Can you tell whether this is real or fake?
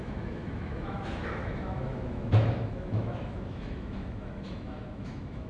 fake